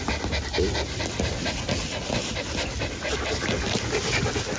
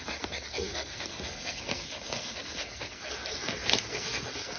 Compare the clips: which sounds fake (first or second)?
second